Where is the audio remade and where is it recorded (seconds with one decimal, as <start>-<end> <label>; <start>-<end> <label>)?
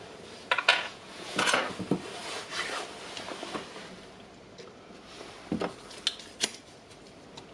0.0-0.7 recorded; 0.7-1.6 remade; 1.6-7.5 recorded